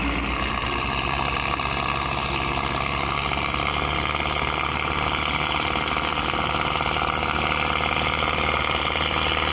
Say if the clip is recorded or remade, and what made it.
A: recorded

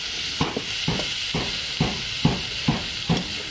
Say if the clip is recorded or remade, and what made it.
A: recorded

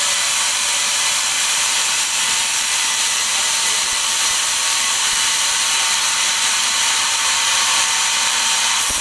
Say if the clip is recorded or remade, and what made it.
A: remade, vocoder, BigVGAN v2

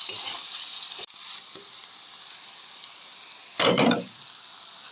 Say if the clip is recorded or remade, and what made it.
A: remade, vocoder, BigVGAN v2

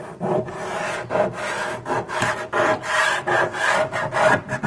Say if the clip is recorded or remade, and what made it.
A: recorded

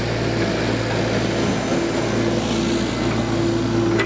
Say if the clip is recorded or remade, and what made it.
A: recorded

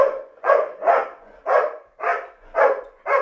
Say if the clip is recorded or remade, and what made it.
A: remade, vocoder, Vocos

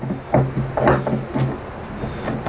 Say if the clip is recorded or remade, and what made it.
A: recorded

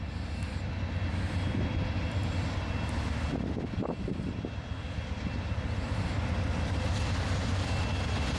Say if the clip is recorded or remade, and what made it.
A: recorded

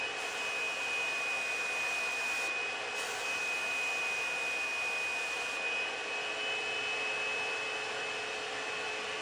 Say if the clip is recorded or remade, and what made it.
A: recorded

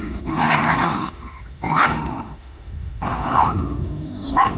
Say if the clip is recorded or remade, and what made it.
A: remade, autoencoder, DAC-VAE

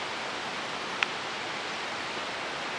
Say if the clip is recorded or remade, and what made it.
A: recorded